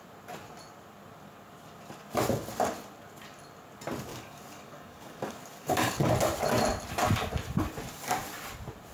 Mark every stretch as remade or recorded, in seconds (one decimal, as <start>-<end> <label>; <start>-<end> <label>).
0.0-4.1 recorded; 4.1-6.1 remade; 6.1-8.9 recorded